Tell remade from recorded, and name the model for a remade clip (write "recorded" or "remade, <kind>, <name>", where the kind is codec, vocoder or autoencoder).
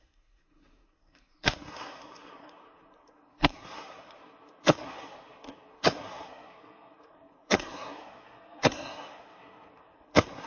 remade, codec, SNAC